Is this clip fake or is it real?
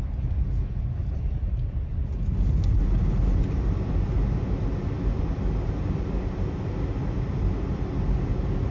real